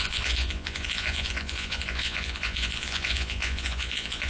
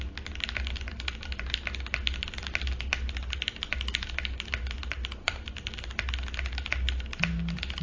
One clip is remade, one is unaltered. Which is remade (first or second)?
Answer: first